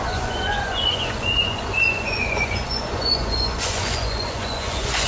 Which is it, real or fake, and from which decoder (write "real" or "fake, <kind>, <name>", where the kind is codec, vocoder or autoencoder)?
fake, vocoder, Vocos